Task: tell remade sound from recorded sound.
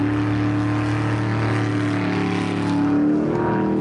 recorded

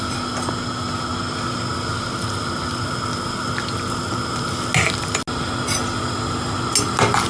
recorded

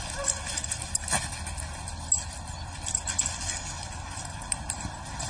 recorded